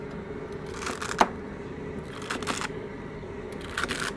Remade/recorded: recorded